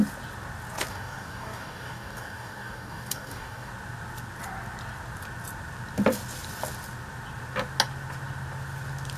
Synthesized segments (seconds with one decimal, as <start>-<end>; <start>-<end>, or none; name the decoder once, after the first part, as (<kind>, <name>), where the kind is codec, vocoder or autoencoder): 0.9-3.7 (codec, DAC)